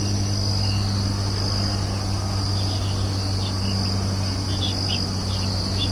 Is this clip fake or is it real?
real